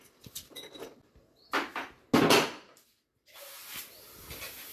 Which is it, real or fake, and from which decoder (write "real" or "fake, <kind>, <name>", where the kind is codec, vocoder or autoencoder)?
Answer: real